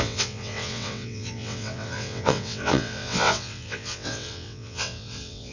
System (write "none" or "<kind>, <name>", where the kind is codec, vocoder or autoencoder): vocoder, WaveNeXt